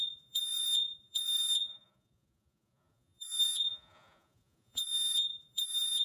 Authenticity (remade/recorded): remade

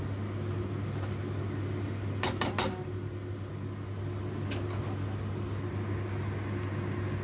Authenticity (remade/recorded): recorded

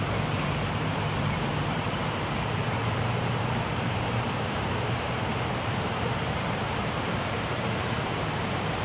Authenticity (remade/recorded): remade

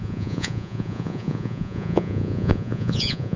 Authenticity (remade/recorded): remade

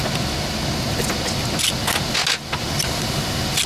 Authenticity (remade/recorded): recorded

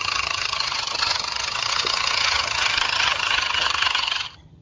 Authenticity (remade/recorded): remade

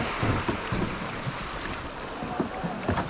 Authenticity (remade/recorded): recorded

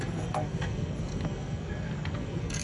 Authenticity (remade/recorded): remade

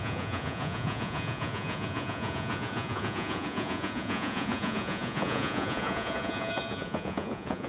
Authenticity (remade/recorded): remade